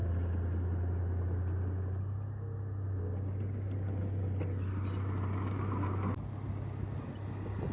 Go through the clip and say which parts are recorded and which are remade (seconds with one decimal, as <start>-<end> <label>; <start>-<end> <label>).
0.0-7.7 recorded